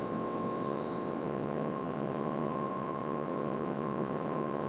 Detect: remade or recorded remade